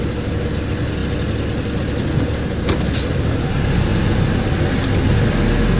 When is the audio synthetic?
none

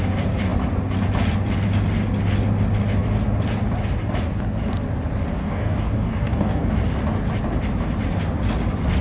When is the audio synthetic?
5.4-6.7